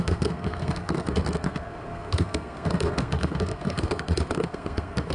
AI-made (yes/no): yes